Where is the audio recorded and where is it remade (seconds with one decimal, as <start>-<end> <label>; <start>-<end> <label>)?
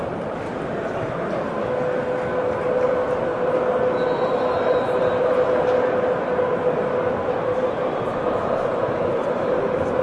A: 0.0-7.4 recorded; 7.4-10.0 remade